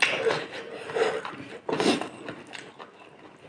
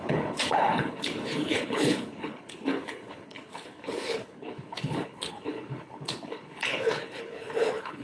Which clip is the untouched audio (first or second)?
first